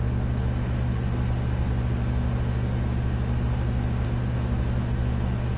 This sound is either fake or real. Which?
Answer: real